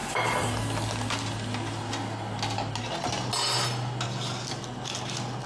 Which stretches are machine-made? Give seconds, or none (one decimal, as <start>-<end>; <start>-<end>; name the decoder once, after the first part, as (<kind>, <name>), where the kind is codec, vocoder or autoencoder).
none